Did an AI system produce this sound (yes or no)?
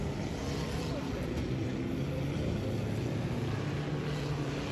no